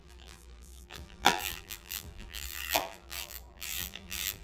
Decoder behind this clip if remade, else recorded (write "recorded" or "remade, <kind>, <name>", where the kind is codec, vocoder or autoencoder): remade, vocoder, BigVGAN v2